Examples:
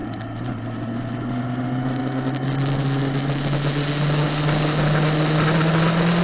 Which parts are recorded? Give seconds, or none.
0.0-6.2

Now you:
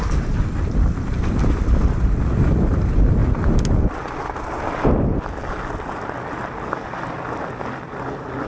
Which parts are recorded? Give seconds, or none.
0.0-8.5

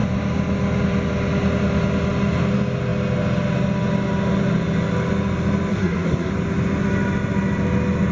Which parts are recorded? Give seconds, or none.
0.0-5.7; 6.3-8.1